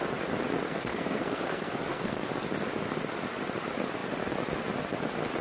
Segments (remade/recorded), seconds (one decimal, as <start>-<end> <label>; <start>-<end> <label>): 0.0-0.6 recorded; 0.6-2.3 remade; 2.3-5.4 recorded